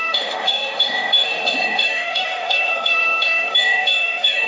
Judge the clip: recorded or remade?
remade